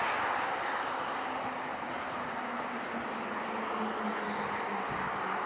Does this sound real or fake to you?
real